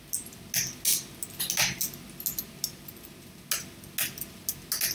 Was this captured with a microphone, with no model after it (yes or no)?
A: yes